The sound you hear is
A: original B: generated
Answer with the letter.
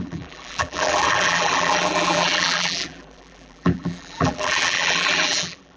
B